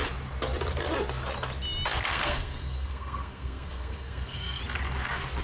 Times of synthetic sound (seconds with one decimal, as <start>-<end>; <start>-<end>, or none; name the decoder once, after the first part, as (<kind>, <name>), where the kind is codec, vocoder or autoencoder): 2.1-4.6 (codec, SNAC)